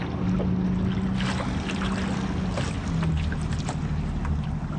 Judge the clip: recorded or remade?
recorded